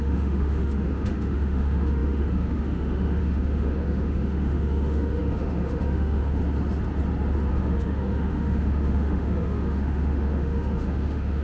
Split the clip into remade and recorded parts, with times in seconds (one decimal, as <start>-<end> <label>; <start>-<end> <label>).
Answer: 0.0-6.4 remade; 6.4-7.5 recorded; 7.5-11.4 remade